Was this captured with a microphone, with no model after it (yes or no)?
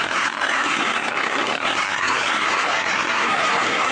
no